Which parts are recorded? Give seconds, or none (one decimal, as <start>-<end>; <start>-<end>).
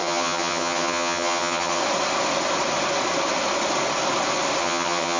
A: 1.8-4.6